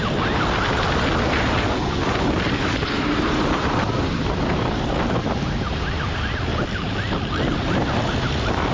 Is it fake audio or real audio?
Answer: real